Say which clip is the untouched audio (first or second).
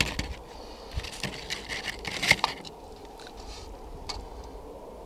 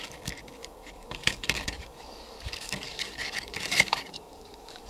first